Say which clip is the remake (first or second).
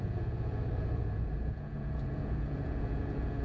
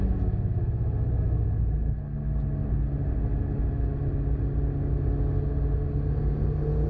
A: first